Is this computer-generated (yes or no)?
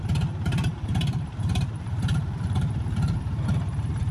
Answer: yes